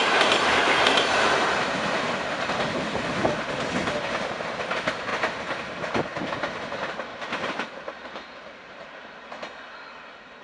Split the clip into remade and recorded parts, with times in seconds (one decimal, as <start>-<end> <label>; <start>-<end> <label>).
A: 0.0-1.3 remade; 1.3-7.1 recorded; 7.1-9.1 remade; 9.1-10.4 recorded